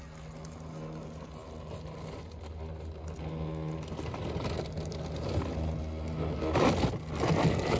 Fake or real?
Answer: real